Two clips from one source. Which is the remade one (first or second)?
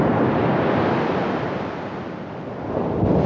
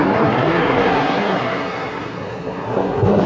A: second